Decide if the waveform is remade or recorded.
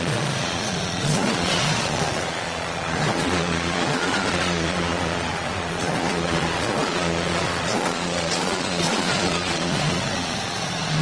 remade